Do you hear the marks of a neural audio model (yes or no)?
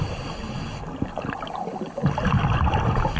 no